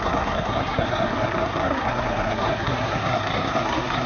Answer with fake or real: fake